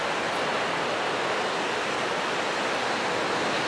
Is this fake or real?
real